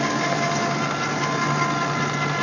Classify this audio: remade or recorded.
recorded